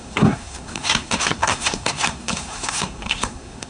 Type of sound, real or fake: fake